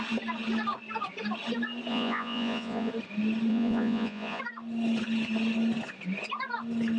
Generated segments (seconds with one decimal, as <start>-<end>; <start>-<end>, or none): 1.9-2.9; 3.5-4.4